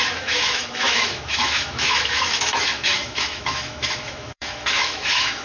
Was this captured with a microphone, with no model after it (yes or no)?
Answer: no